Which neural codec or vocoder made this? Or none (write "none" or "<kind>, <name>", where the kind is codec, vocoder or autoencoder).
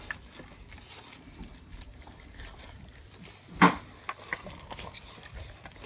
none